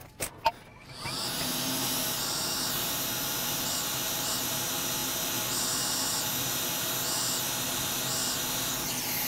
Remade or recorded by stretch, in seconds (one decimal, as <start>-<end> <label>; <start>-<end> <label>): 0.0-9.3 recorded